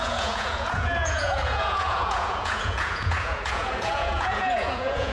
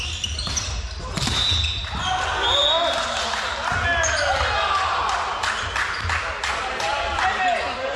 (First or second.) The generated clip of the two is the first